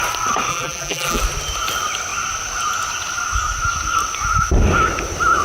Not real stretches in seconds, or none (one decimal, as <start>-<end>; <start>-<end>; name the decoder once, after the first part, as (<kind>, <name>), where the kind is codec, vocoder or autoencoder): 0.5-1.2 (vocoder, BigVGAN v2)